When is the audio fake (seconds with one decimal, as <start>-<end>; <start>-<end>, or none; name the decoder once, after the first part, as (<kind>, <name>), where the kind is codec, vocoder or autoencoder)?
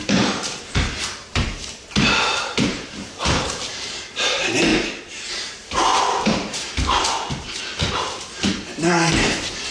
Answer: 0.0-4.7 (vocoder, BigVGAN v2); 5.3-9.7